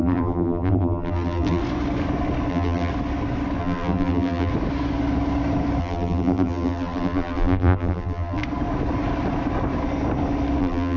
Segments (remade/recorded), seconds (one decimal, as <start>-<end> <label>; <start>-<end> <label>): 0.0-1.6 remade; 1.6-2.5 recorded; 2.5-2.9 remade; 2.9-3.6 recorded; 3.6-4.5 remade; 4.5-5.8 recorded; 5.8-8.4 remade; 8.4-10.6 recorded; 10.6-11.0 remade